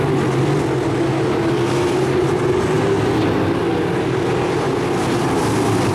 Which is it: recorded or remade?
recorded